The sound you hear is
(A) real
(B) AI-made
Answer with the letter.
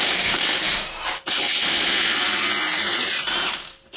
A